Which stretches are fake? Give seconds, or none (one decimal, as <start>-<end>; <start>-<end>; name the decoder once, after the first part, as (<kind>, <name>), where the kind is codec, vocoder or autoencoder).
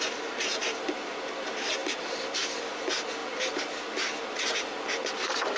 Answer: none